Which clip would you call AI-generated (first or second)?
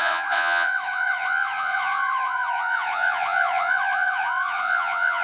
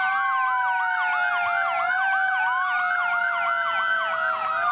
first